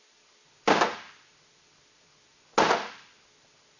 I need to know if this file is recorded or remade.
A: recorded